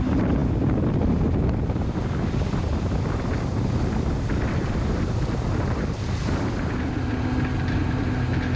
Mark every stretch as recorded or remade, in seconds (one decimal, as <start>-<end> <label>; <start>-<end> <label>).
0.0-8.6 recorded